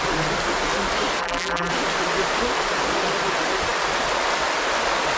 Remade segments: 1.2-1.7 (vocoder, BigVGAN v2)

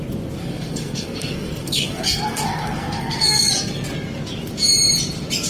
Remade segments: 0.4-3.5 (codec, SNAC)